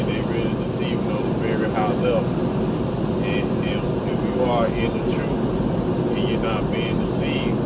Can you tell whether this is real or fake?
real